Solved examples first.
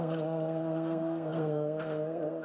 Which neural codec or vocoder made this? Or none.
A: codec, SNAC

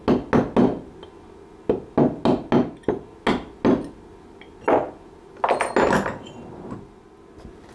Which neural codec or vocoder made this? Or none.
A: none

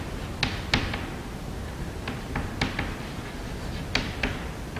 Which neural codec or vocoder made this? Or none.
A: none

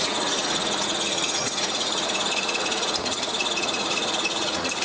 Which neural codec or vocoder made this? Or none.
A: vocoder, Vocos